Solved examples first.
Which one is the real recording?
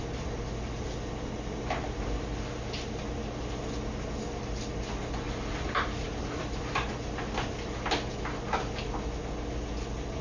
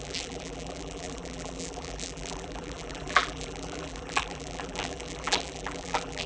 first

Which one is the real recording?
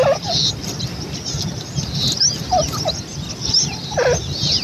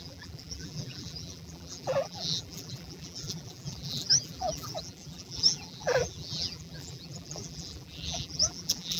first